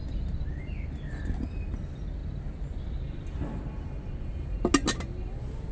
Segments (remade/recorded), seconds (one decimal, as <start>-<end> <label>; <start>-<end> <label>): 0.0-0.6 remade; 0.6-5.7 recorded